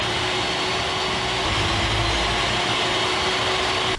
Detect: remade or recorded recorded